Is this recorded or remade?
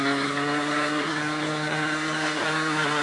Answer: remade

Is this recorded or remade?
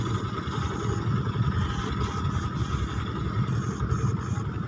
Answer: recorded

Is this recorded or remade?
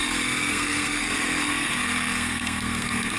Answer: remade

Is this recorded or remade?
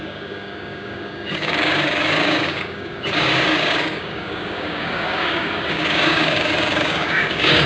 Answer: remade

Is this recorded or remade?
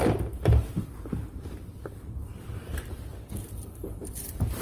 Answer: remade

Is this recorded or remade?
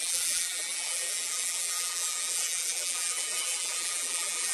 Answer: remade